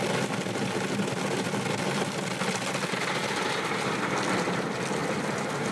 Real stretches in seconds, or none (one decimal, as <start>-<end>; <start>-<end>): 0.0-5.7